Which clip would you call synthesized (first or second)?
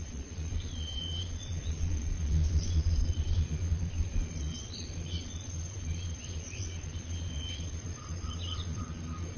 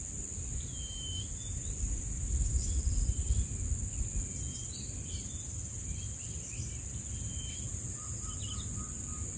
first